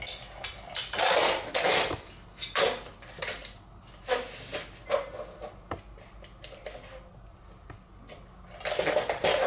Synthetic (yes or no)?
no